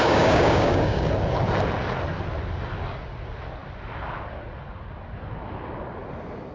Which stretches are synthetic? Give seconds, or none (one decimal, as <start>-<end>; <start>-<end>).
0.0-1.1